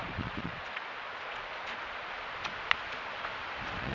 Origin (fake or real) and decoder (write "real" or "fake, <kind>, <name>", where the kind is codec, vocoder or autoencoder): fake, vocoder, Vocos